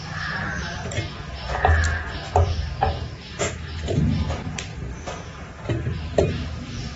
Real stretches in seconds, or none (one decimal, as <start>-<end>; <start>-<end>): 0.0-4.7; 6.3-7.0